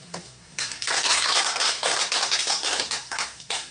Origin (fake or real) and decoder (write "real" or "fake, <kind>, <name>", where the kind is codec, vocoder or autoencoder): fake, codec, SNAC